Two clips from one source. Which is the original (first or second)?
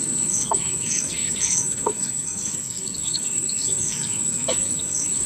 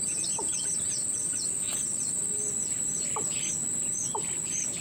second